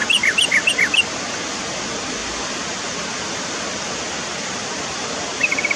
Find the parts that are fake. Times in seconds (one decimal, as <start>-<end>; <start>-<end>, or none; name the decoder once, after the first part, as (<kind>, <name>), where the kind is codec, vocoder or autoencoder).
none